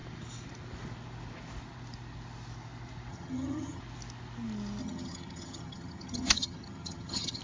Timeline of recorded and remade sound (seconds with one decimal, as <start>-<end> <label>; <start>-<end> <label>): 0.0-3.1 recorded; 3.1-3.8 remade; 3.8-4.8 recorded; 4.8-7.4 remade